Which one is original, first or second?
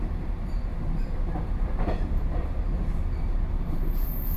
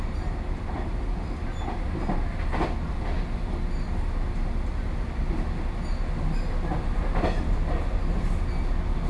second